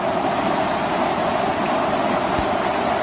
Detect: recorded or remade recorded